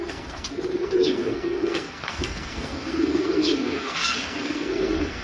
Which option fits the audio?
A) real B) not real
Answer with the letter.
B